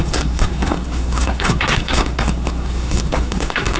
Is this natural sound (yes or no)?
no